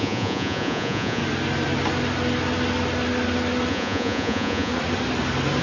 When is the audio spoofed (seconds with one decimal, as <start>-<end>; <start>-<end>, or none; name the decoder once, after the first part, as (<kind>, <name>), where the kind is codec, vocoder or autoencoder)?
0.0-1.2 (vocoder, Vocos); 3.7-4.7